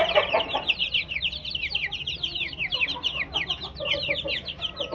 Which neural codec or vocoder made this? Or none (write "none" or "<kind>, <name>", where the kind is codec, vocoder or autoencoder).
vocoder, BigVGAN v2